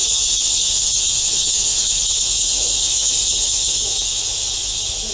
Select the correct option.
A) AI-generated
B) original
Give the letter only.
A